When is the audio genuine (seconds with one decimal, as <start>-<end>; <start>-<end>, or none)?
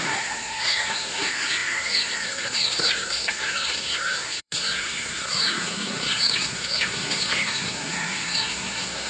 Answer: none